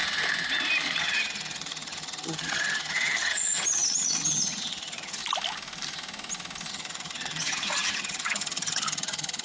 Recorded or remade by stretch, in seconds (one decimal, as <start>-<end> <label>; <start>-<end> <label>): 0.0-1.0 recorded; 1.0-5.2 remade; 5.2-6.7 recorded; 6.7-9.4 remade